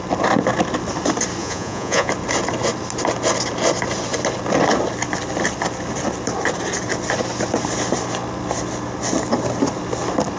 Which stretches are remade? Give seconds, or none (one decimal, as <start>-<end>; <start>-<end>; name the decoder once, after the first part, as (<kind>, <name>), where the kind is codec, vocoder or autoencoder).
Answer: 1.4-2.1 (vocoder, Vocos)